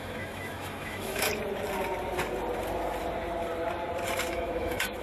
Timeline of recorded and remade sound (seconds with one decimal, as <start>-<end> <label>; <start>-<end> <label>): 0.0-1.3 remade; 1.3-4.3 recorded; 4.3-5.0 remade